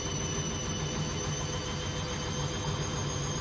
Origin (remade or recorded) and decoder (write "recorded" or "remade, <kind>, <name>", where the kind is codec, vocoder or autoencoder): recorded